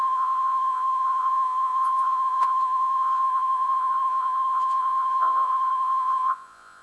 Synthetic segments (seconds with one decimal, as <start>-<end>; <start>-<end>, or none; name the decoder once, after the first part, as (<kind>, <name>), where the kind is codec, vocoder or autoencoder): 0.0-6.8 (vocoder, Vocos)